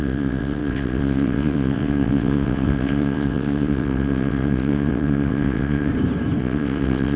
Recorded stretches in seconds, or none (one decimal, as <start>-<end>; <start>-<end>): 5.9-6.4